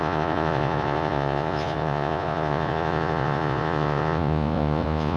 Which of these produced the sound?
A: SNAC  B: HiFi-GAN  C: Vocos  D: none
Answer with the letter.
C